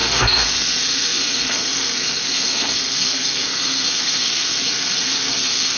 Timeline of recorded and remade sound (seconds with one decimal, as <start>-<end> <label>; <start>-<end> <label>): 0.0-5.8 remade